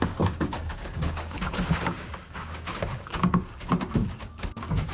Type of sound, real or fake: fake